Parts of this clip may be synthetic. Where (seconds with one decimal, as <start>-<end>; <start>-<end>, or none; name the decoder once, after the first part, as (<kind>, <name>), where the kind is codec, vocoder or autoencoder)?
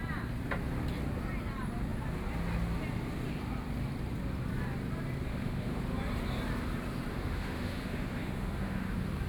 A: 5.3-5.8 (autoencoder, DAC-VAE); 7.1-8.9